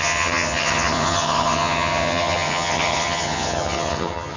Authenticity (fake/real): fake